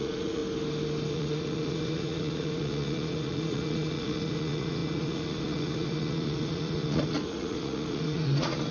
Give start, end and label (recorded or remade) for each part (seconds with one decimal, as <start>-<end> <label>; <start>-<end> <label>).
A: 0.0-0.4 remade; 0.4-1.1 recorded; 1.1-8.7 remade